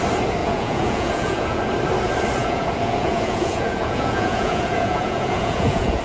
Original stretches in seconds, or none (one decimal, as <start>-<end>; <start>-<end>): 0.0-0.4; 1.6-2.4